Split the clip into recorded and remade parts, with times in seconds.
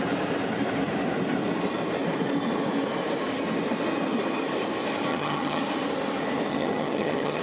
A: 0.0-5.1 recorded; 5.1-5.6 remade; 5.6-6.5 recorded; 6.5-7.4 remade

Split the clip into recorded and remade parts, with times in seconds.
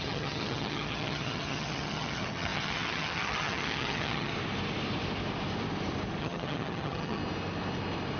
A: 0.0-4.3 remade; 4.3-6.2 recorded; 6.2-7.2 remade; 7.2-8.2 recorded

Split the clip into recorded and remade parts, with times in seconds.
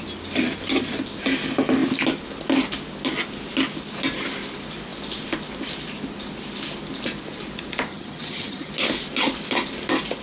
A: 0.0-7.9 recorded; 7.9-8.7 remade; 8.7-10.2 recorded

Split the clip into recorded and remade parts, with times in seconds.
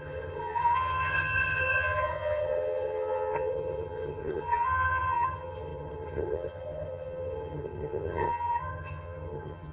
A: 0.0-9.7 remade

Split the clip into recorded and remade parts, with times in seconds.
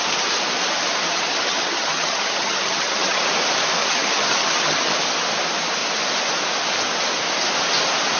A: 0.0-1.1 recorded; 1.1-3.2 remade; 3.2-3.8 recorded; 3.8-4.9 remade; 4.9-8.2 recorded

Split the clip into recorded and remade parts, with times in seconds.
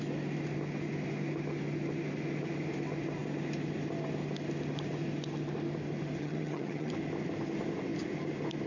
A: 0.0-6.2 recorded; 6.2-6.9 remade; 6.9-8.7 recorded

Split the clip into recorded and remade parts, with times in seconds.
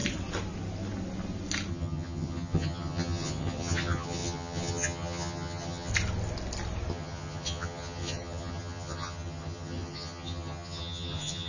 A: 0.0-1.7 recorded; 1.7-5.9 remade; 5.9-6.9 recorded; 6.9-11.5 remade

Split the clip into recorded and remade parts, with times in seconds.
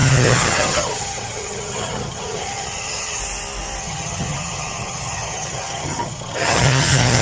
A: 0.0-3.2 remade; 3.2-3.8 recorded; 3.8-7.2 remade